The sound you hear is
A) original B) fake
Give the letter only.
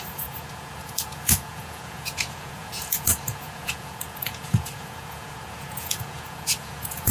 B